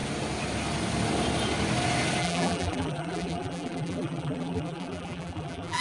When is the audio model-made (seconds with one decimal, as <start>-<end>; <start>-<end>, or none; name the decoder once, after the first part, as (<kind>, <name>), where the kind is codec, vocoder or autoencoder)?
2.2-5.8 (vocoder, BigVGAN v2)